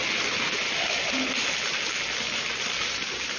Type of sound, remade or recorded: recorded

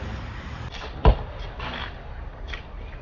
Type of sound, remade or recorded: recorded